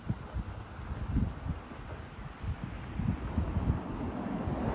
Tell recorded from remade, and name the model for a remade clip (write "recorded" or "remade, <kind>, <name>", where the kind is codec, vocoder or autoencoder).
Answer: recorded